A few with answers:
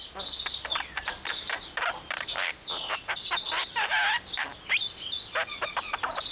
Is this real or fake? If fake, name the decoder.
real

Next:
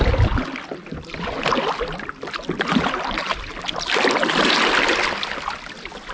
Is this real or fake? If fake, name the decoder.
real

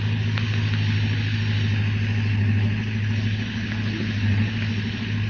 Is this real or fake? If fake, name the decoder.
real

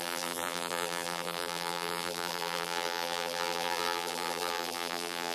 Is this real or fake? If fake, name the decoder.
fake, vocoder, BigVGAN v2